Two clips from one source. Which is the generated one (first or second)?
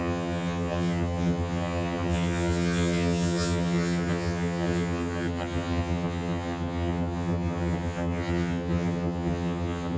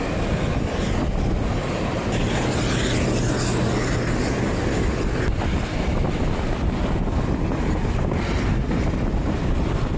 first